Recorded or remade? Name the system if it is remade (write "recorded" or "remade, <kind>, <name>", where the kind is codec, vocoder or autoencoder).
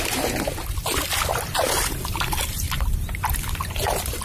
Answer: remade, vocoder, BigVGAN v2